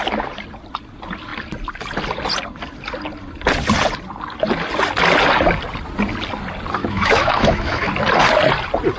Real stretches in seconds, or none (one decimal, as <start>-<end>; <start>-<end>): 0.0-6.8; 7.9-9.0